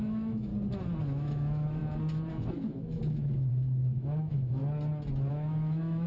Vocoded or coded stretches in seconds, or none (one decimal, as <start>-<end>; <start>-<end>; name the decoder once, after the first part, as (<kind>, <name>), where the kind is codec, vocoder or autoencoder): 0.0-0.5 (autoencoder, DAC-VAE); 1.0-1.8; 2.3-4.6; 5.3-6.1